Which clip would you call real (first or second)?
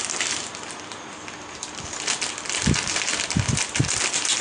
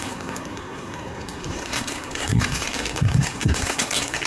first